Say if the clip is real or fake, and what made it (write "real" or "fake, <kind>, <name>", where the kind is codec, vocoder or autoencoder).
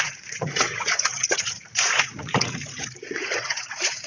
fake, vocoder, Vocos